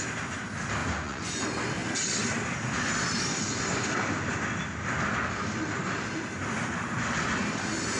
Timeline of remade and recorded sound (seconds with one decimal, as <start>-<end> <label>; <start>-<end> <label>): 0.0-0.8 recorded; 0.8-1.4 remade; 1.4-8.0 recorded